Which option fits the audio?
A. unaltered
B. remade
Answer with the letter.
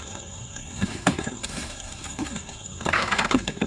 B